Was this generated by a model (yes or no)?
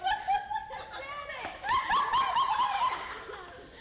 no